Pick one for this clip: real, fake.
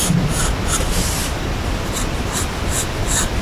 real